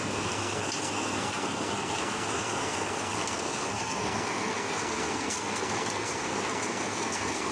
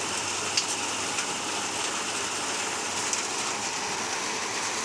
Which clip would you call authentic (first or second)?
second